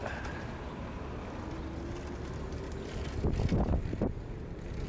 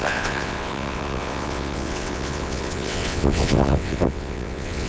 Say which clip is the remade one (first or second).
second